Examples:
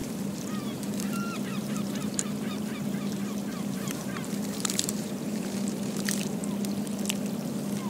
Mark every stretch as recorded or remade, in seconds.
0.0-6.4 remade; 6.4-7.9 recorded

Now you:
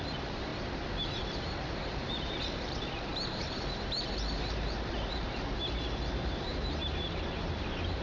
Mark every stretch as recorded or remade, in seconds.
0.0-0.5 remade; 0.5-1.2 recorded; 1.2-8.0 remade